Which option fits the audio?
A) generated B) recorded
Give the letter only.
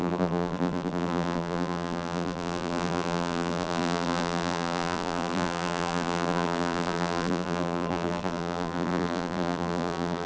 A